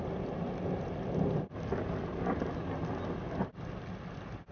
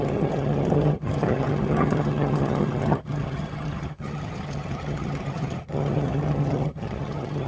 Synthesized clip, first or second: second